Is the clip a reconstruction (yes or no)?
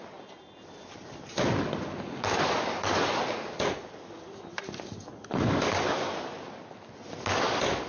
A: no